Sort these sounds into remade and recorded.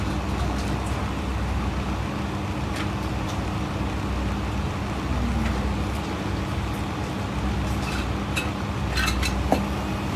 recorded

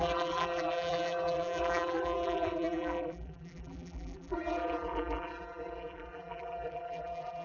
remade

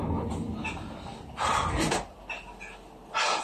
recorded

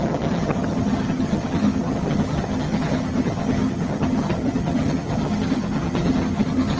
remade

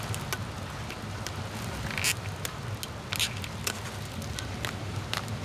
recorded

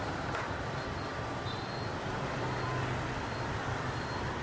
remade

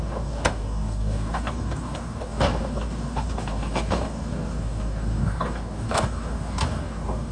remade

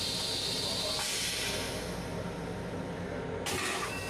recorded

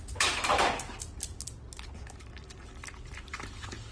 recorded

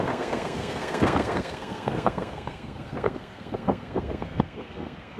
remade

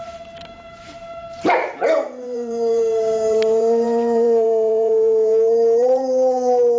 remade